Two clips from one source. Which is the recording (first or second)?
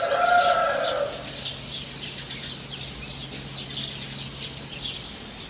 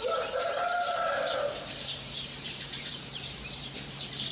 first